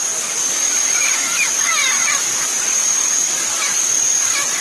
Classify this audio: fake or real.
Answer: real